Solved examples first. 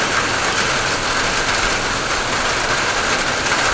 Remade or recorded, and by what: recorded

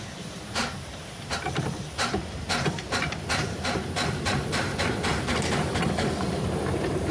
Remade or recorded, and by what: remade, vocoder, BigVGAN v2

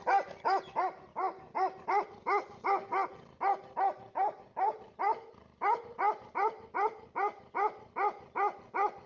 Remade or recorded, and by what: recorded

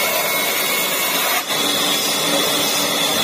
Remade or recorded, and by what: recorded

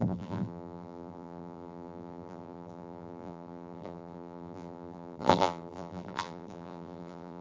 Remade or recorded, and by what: remade, vocoder, BigVGAN v2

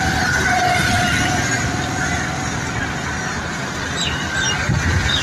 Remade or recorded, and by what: recorded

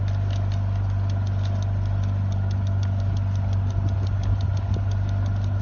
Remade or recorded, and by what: recorded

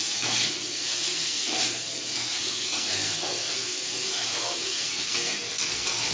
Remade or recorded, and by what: remade, codec, SNAC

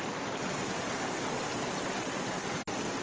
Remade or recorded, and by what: recorded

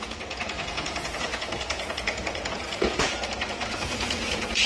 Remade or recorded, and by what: remade, vocoder, Vocos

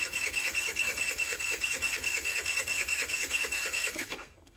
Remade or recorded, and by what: remade, codec, SNAC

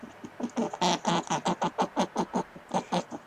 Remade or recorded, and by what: recorded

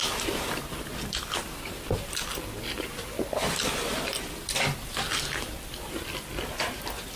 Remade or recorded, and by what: recorded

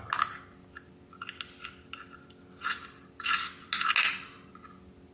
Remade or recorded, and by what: recorded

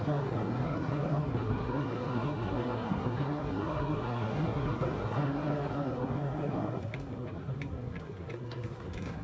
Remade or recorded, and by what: remade, codec, SNAC